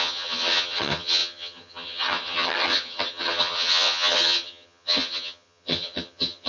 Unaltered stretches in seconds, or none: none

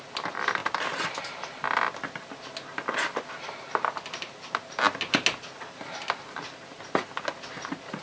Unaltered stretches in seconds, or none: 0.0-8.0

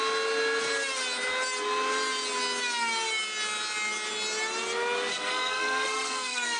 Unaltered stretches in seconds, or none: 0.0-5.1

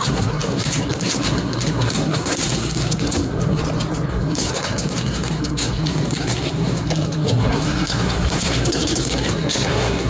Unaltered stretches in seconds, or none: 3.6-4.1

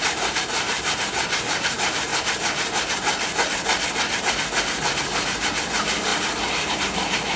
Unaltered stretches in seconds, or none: 2.1-4.2; 6.1-6.7

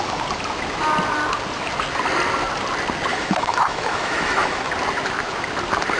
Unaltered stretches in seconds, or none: 0.0-3.1; 4.7-6.0